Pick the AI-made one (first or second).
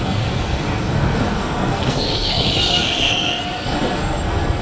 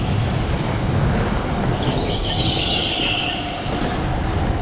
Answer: first